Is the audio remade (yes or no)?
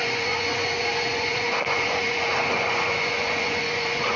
yes